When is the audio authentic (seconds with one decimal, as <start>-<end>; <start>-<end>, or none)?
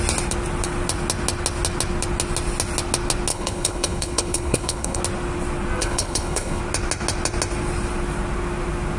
0.0-3.3; 5.0-5.8; 6.6-9.0